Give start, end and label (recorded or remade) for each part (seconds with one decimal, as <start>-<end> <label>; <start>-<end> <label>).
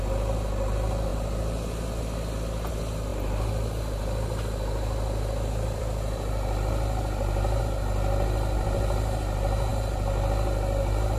0.0-3.1 recorded; 3.1-7.6 remade; 7.6-11.2 recorded